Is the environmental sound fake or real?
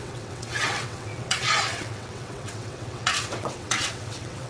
fake